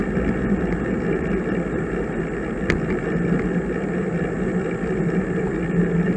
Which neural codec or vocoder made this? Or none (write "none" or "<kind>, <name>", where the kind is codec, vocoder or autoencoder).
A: none